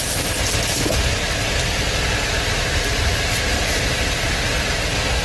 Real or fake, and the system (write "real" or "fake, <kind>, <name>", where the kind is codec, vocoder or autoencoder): real